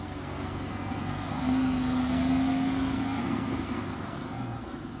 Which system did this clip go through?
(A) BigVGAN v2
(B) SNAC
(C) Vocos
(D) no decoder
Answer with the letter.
B